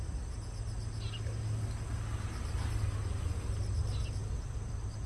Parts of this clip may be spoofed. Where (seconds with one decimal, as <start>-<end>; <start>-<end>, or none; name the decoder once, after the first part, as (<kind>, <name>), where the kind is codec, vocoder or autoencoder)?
4.2-5.1 (vocoder, BigVGAN v2)